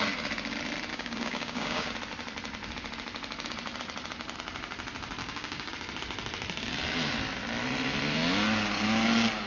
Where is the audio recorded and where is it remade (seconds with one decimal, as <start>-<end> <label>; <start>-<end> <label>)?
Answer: 0.0-0.9 recorded; 0.9-1.9 remade; 1.9-5.2 recorded; 5.2-5.7 remade; 5.7-9.5 recorded